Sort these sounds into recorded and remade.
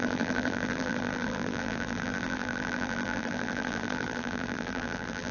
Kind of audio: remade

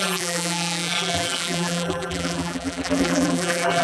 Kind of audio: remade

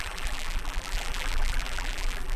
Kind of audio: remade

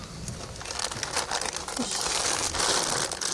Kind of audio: recorded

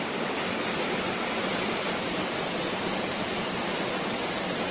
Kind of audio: remade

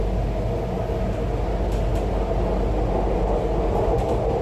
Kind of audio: recorded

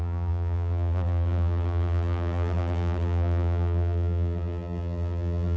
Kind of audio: remade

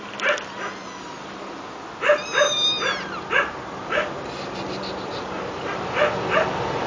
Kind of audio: recorded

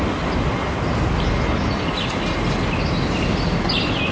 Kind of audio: recorded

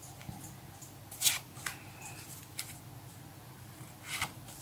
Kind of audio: recorded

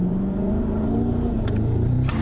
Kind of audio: remade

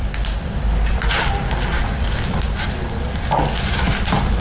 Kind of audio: remade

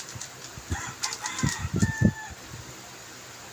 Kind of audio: remade